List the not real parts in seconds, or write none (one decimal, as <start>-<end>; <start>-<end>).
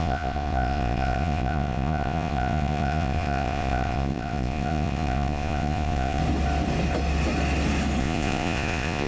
0.0-6.2; 8.0-9.1